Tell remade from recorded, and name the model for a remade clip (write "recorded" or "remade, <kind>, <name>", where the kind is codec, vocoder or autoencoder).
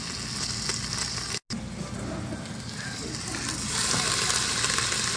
recorded